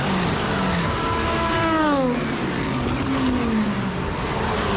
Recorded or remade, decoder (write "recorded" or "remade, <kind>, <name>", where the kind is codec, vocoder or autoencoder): recorded